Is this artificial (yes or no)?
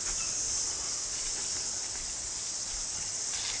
no